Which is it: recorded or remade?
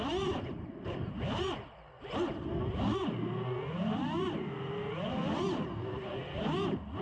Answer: recorded